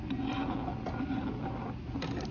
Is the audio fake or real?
real